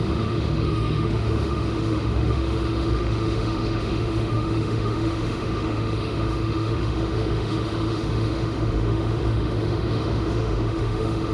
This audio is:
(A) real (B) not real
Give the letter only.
B